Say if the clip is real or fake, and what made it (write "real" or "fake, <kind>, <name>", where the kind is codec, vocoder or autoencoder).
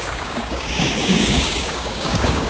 fake, codec, DAC